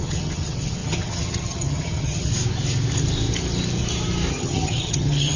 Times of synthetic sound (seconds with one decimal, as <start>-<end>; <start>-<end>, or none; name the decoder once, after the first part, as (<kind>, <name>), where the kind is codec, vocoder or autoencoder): 0.0-2.3 (vocoder, HiFi-GAN); 4.3-5.4